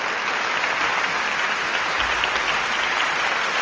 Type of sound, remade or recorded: remade